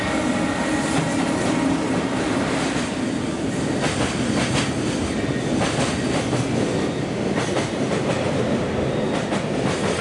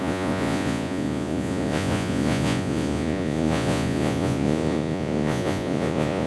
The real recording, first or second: first